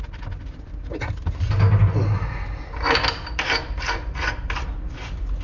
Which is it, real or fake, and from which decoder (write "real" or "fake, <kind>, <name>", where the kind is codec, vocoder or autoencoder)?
real